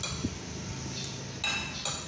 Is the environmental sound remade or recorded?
recorded